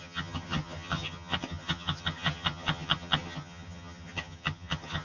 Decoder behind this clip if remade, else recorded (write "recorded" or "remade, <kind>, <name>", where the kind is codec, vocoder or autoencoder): remade, vocoder, HiFi-GAN